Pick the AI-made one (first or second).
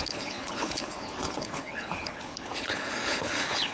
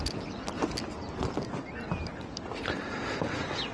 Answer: first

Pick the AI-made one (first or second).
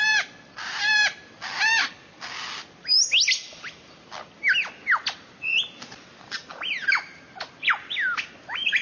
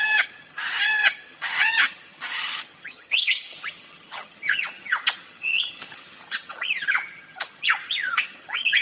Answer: second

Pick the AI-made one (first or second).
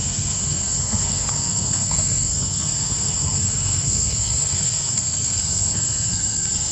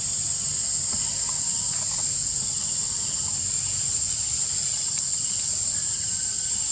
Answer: first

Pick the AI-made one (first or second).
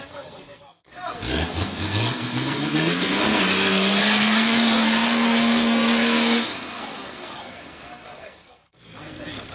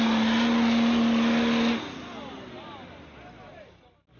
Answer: first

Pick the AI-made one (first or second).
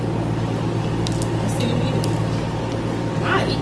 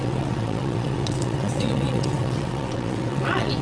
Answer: second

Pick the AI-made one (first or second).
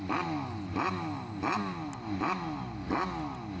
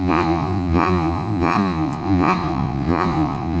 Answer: second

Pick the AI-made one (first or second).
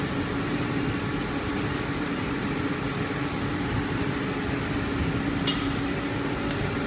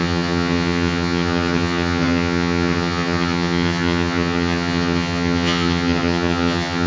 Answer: second